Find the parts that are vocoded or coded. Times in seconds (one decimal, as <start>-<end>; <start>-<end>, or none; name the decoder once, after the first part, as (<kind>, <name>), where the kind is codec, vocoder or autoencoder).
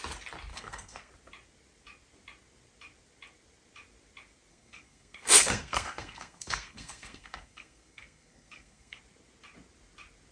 0.5-1.1 (codec, SNAC); 4.5-9.0